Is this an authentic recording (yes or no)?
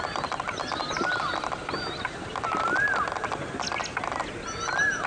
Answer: yes